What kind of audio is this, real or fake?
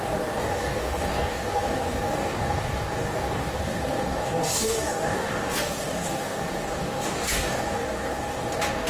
fake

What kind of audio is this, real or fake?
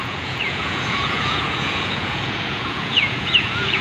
fake